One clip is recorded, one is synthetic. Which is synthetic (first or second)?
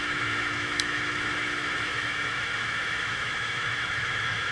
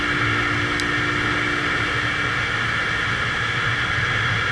first